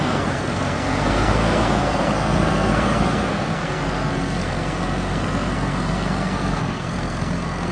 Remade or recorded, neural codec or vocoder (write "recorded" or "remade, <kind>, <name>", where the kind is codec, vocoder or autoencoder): remade, codec, SNAC